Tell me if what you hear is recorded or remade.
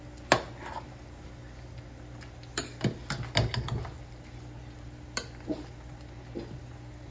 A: recorded